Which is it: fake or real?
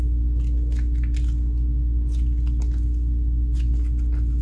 real